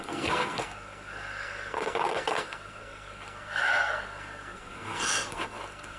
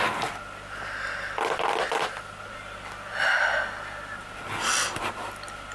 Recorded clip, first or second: second